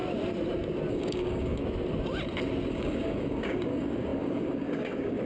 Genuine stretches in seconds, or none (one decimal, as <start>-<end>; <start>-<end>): 0.0-0.9; 1.6-2.7